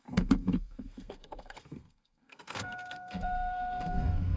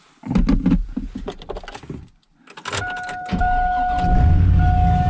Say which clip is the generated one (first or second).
first